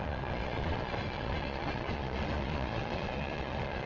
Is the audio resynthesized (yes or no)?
yes